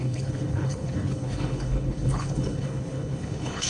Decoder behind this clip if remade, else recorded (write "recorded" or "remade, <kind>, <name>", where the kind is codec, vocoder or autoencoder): remade, codec, HILCodec